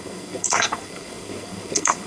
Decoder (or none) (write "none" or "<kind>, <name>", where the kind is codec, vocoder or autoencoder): codec, SNAC